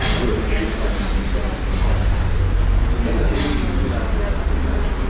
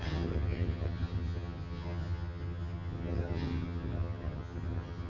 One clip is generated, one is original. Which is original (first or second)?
first